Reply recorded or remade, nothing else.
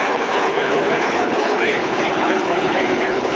remade